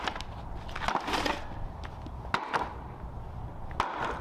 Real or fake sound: real